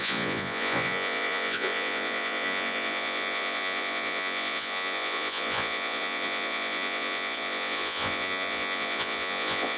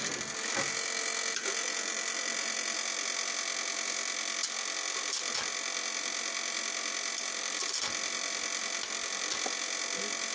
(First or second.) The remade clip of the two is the first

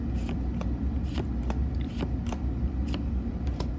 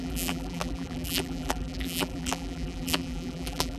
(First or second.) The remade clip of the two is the second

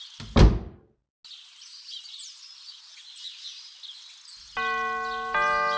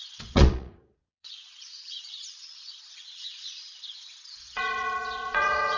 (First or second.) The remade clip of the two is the second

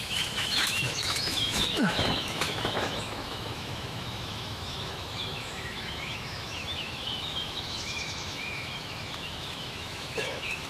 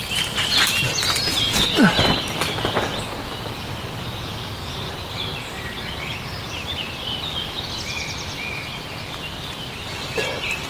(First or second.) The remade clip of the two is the first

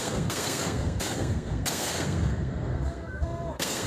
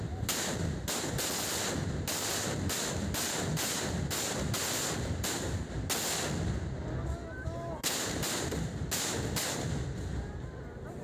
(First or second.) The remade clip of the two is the first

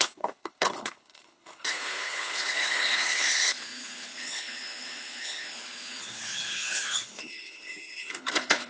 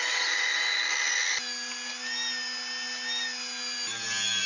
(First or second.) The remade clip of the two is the first